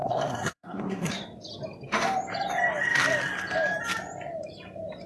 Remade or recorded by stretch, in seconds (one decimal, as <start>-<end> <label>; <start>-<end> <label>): 0.0-1.1 remade; 1.1-5.1 recorded